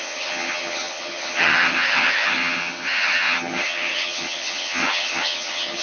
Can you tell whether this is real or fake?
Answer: fake